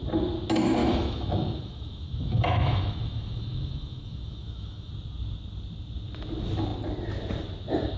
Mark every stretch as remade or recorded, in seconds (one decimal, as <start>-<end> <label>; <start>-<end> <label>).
0.0-0.8 recorded; 0.8-4.9 remade; 4.9-8.0 recorded